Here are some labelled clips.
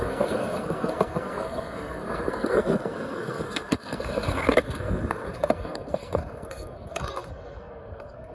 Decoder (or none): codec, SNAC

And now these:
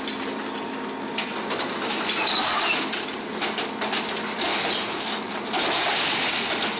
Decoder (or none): none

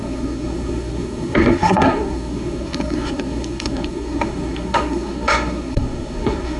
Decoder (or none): codec, SNAC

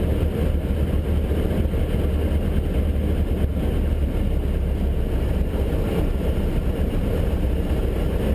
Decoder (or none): none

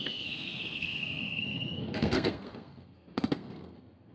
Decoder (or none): codec, SNAC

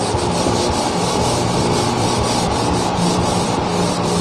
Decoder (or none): none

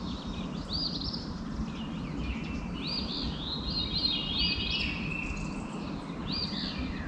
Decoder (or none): none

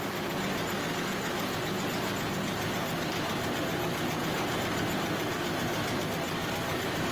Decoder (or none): none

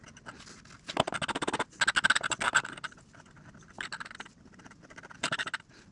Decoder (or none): none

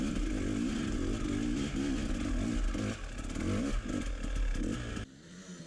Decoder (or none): none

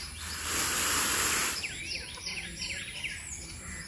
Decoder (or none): none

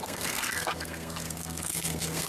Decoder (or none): codec, SNAC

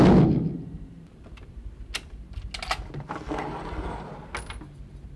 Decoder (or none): none